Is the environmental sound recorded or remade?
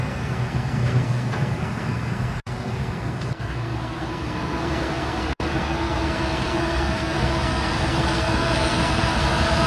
remade